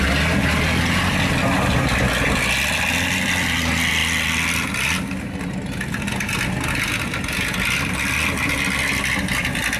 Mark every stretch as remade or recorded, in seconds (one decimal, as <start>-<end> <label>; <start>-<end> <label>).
0.0-9.8 recorded

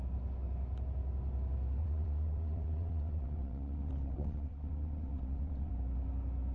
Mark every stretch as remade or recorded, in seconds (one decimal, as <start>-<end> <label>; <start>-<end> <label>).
0.0-1.8 recorded; 1.8-5.7 remade; 5.7-6.5 recorded

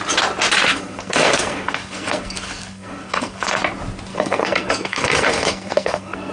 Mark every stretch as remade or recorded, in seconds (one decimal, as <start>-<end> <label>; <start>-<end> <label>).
0.0-0.7 recorded; 0.7-3.6 remade; 3.6-4.1 recorded; 4.1-6.3 remade

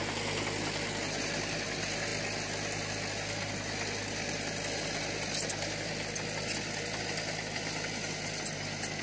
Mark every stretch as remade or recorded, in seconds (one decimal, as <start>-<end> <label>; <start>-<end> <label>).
0.0-9.0 recorded

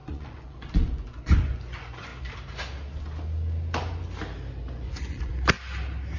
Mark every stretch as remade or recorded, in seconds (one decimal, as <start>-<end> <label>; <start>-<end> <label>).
0.0-2.1 remade; 2.1-4.7 recorded; 4.7-5.3 remade; 5.3-6.2 recorded

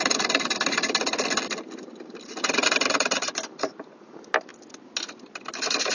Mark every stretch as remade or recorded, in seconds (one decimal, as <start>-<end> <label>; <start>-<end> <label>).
0.0-5.9 recorded

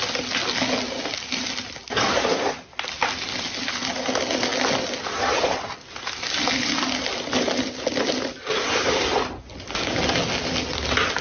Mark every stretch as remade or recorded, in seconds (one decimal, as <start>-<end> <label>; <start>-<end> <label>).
0.0-11.2 recorded